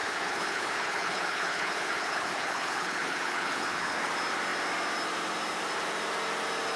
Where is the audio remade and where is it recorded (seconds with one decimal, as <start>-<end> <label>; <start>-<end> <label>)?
0.0-4.1 remade; 4.1-6.8 recorded